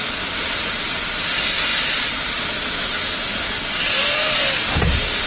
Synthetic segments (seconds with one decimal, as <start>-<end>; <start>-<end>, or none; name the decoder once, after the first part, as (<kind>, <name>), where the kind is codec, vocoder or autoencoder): none